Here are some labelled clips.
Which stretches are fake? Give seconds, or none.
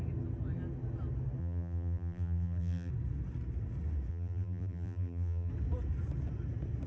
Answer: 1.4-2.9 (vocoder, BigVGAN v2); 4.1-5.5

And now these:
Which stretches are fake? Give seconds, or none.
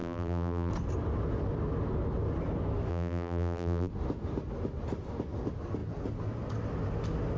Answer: 0.0-0.7 (vocoder, BigVGAN v2); 2.9-3.9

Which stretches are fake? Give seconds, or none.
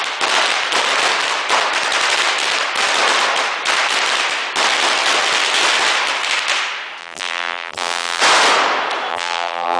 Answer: 7.0-8.2 (vocoder, BigVGAN v2); 9.1-9.8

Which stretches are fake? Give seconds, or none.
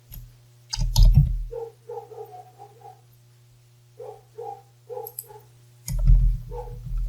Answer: none